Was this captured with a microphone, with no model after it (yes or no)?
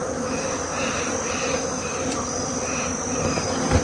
yes